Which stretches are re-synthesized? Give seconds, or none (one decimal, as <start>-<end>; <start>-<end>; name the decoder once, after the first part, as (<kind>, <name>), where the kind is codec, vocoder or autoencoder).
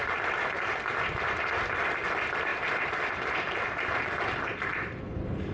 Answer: 0.0-2.5 (vocoder, BigVGAN v2); 4.0-5.5